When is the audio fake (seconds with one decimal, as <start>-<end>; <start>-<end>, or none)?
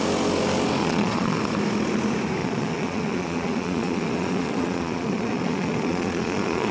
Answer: 0.8-1.4; 2.4-6.7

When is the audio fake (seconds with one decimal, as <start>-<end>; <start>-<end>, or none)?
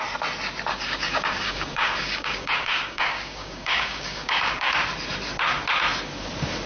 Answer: 0.7-4.7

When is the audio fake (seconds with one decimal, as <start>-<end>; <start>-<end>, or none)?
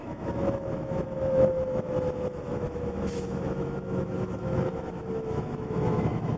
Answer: 0.0-6.4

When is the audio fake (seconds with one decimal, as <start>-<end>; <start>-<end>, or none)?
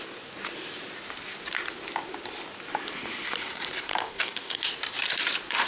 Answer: 4.0-4.6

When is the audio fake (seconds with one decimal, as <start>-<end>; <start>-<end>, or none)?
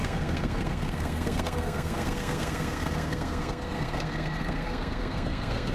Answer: 0.0-5.7